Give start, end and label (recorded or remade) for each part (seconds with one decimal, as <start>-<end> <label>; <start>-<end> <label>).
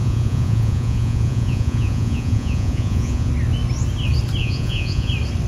0.0-3.3 remade; 3.3-4.4 recorded; 4.4-5.1 remade; 5.1-5.5 recorded